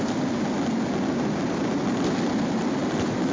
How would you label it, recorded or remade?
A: recorded